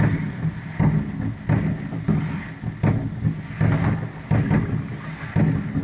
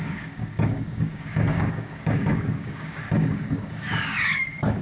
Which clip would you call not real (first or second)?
second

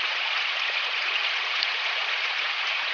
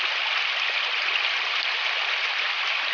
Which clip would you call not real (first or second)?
first